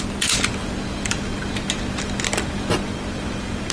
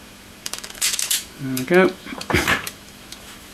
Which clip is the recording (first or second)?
first